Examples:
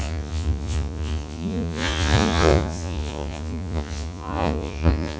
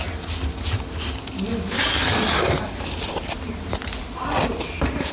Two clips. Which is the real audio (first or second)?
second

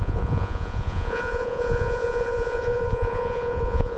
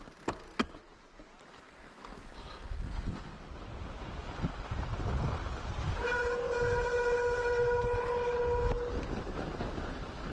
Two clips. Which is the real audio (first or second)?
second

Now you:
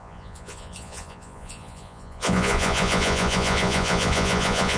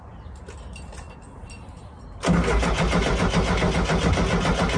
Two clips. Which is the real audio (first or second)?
second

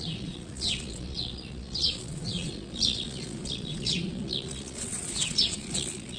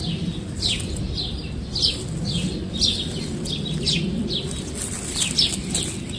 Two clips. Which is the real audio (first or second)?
second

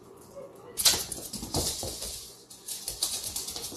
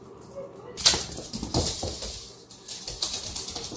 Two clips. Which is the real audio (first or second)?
second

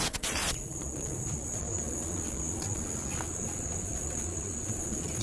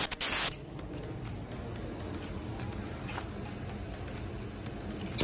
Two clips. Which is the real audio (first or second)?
second